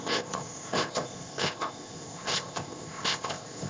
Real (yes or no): no